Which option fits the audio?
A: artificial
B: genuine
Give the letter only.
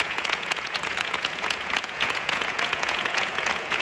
A